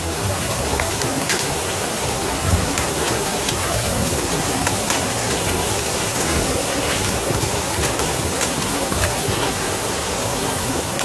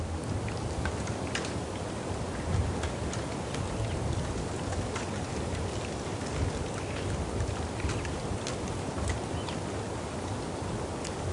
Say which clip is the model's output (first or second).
first